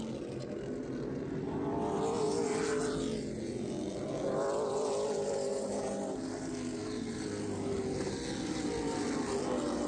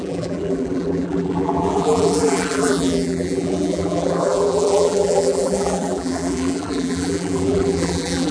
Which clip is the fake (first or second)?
second